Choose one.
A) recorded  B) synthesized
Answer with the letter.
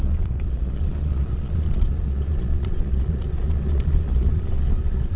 B